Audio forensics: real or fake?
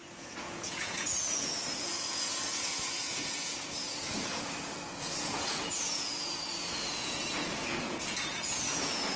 fake